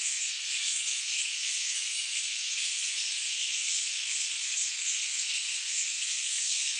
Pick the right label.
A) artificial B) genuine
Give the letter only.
A